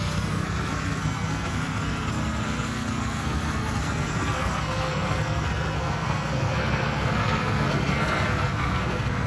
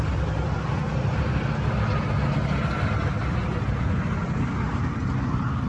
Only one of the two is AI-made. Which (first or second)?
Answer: first